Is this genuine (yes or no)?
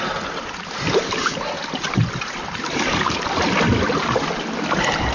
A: yes